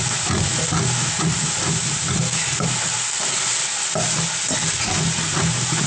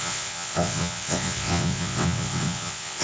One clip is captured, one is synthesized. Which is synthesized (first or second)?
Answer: second